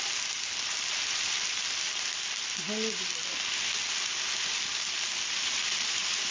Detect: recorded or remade recorded